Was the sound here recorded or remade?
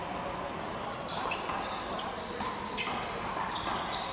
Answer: recorded